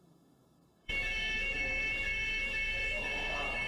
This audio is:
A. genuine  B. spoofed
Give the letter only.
B